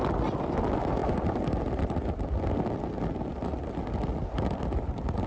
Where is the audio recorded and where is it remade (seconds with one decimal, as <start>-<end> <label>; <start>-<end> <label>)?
0.0-5.3 recorded